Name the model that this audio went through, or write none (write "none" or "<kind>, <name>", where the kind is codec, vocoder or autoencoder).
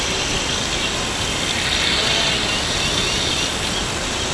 none